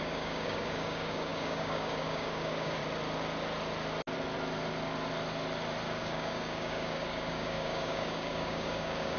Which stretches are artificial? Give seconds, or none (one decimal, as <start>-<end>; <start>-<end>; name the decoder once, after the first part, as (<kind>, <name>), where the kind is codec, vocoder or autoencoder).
0.0-2.8 (codec, DAC); 6.0-9.2